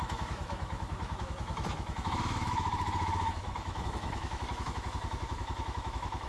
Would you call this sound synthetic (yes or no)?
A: yes